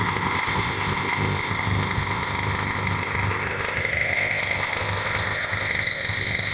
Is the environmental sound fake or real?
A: fake